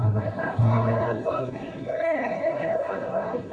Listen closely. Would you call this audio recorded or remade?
remade